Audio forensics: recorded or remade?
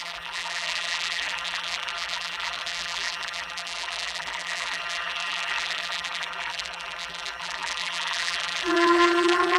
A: remade